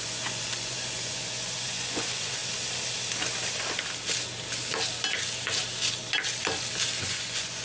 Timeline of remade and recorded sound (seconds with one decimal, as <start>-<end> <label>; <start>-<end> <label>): 0.0-2.4 remade; 2.4-7.0 recorded; 7.0-7.6 remade